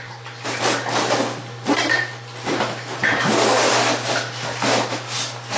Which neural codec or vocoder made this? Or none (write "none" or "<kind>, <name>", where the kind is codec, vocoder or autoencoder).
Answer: none